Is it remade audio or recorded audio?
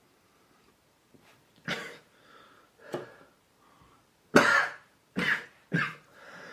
remade